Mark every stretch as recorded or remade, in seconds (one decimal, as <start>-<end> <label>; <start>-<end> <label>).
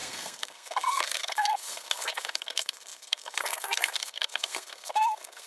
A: 0.0-5.5 remade